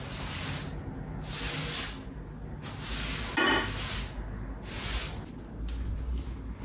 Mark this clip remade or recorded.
recorded